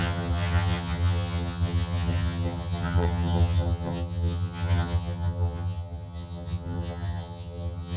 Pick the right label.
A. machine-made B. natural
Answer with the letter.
A